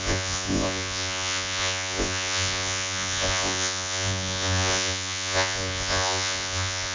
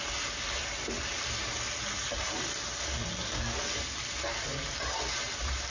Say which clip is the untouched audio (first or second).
second